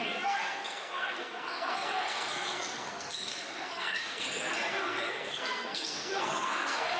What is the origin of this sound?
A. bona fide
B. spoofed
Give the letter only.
B